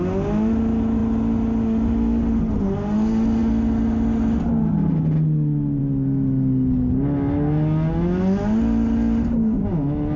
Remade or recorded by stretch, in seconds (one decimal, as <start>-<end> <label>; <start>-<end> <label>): 0.0-10.2 recorded